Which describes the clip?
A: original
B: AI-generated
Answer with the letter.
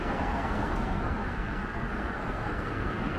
B